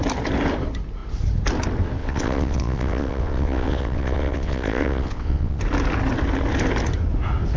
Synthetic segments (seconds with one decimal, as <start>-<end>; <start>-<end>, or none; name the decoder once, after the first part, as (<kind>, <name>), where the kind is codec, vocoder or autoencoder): 2.0-5.6 (vocoder, WaveNeXt)